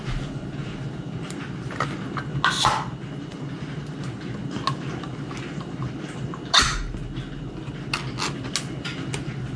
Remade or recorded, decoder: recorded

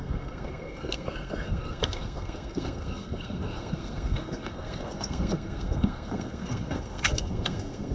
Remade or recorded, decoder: remade, codec, SNAC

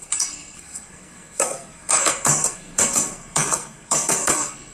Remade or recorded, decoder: remade, codec, SNAC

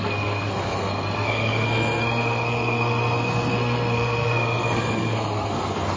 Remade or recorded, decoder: remade, codec, SNAC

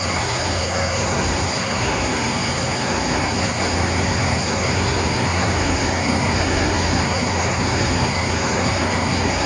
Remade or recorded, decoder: remade, codec, SNAC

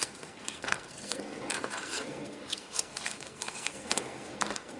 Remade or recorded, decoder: remade, codec, SNAC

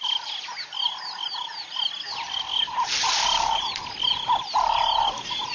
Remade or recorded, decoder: recorded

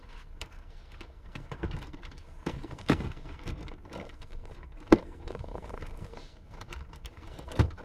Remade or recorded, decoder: remade, codec, SNAC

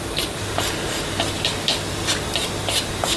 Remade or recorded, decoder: recorded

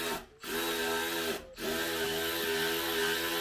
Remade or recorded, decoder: recorded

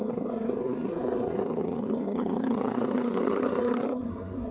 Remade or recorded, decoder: remade, codec, SNAC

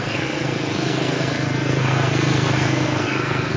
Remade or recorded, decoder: remade, codec, SNAC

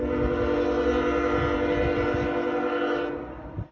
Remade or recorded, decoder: recorded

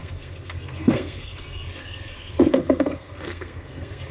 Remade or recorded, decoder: remade, codec, SNAC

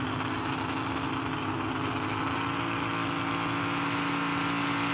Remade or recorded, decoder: recorded